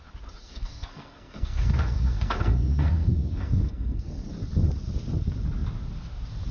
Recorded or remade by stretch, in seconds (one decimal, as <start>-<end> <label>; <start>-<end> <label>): 0.0-0.4 recorded; 0.4-4.3 remade; 4.3-6.5 recorded